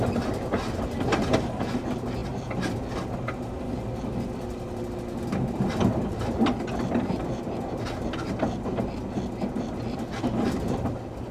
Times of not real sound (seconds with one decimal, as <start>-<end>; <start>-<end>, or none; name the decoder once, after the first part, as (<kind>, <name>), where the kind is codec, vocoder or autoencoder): none

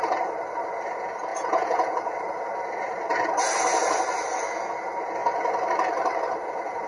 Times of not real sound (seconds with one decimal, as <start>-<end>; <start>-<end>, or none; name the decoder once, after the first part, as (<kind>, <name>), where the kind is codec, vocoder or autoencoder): 1.3-2.1 (vocoder, Vocos)

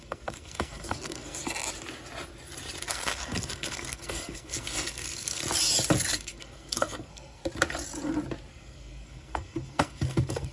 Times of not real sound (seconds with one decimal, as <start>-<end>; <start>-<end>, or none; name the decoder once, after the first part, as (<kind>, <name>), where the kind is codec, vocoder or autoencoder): 0.0-1.4 (codec, SNAC); 2.8-5.4; 6.1-7.4; 8.5-10.5

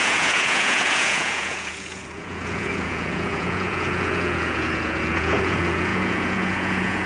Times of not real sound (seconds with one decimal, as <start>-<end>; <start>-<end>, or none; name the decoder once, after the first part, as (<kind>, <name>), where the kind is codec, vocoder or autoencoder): 0.0-7.1 (vocoder, Vocos)

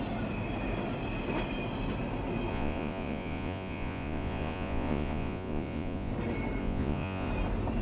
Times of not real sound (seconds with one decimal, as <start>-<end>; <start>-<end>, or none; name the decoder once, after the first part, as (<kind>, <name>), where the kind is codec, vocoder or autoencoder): 2.5-6.1 (vocoder, Vocos); 6.6-7.3

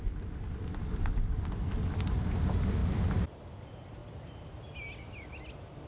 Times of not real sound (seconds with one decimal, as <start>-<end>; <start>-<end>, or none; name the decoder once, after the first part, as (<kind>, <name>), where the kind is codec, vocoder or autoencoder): none